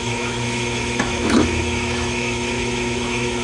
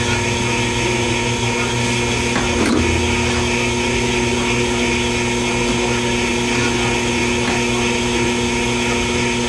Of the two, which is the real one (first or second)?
second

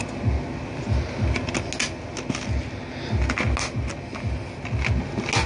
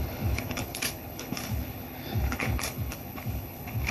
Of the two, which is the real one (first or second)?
first